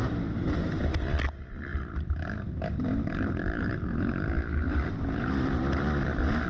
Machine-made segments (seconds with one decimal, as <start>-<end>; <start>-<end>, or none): 0.0-1.0; 1.7-5.6